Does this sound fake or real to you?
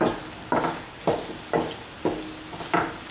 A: real